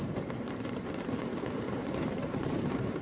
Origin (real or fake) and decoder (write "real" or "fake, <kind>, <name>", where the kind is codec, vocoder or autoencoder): fake, vocoder, BigVGAN v2